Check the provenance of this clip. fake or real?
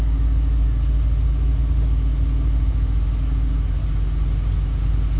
real